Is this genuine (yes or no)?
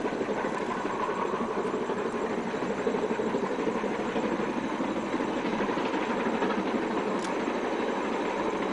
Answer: yes